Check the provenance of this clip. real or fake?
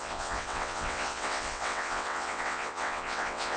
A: fake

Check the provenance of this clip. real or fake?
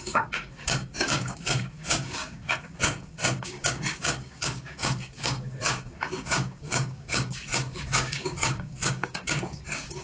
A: fake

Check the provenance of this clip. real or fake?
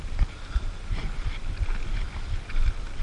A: real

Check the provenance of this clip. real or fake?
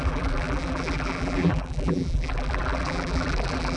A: fake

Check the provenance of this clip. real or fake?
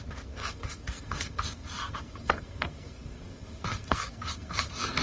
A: fake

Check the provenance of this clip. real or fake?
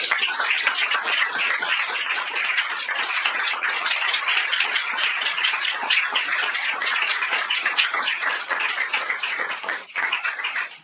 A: fake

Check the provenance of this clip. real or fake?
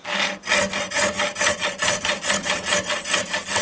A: real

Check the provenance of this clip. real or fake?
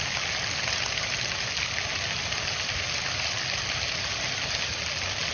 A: real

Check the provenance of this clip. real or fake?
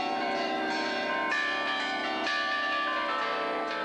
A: fake